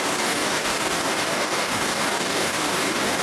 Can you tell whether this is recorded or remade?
remade